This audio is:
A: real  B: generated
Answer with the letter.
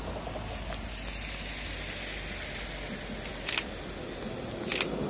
A